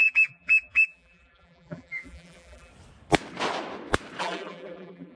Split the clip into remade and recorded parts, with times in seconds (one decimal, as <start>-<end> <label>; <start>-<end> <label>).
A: 0.0-2.7 remade; 2.7-4.2 recorded; 4.2-5.2 remade